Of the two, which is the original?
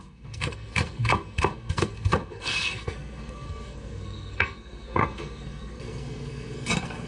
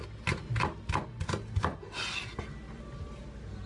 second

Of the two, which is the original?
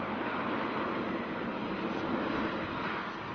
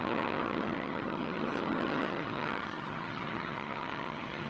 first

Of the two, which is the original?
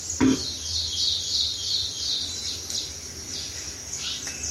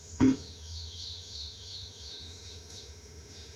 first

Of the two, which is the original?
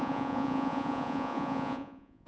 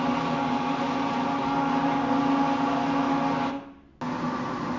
second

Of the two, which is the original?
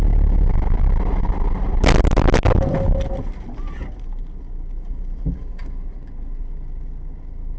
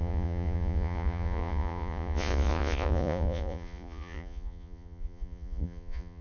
first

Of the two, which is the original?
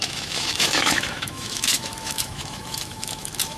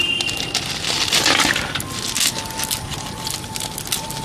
second